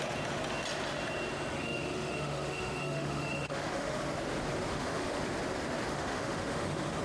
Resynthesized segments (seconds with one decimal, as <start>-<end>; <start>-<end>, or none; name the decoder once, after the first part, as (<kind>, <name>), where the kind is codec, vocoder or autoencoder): 1.5-4.0 (autoencoder, DAC-VAE); 4.7-5.2; 5.9-7.0